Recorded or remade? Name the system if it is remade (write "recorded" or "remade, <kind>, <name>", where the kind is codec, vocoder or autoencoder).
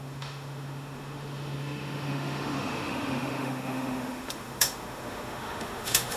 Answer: remade, autoencoder, DAC-VAE